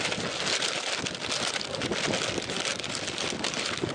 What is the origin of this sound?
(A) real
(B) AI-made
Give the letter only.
A